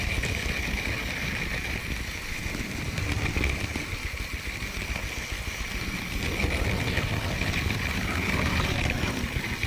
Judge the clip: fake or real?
real